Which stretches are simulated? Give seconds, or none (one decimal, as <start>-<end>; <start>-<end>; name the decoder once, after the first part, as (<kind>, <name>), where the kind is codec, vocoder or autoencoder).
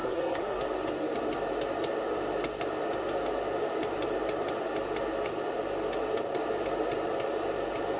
0.0-0.6 (codec, SNAC)